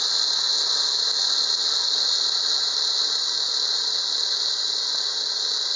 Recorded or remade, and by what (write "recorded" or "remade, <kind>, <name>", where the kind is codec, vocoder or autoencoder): recorded